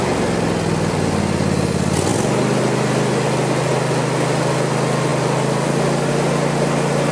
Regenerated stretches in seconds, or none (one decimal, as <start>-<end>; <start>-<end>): 2.1-2.6; 5.1-6.1